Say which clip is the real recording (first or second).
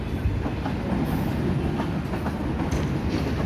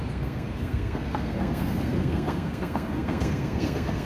first